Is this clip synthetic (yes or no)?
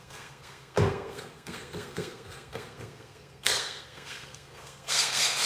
yes